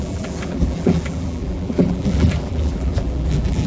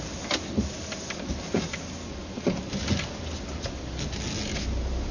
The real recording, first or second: second